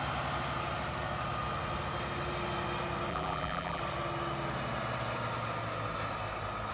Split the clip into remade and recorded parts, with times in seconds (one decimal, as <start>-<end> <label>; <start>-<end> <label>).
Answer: 0.0-3.1 recorded; 3.1-3.8 remade; 3.8-6.7 recorded